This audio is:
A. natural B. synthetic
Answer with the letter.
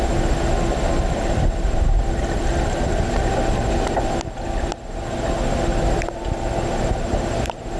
A